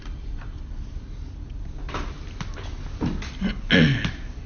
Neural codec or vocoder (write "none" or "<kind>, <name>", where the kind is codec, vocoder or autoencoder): none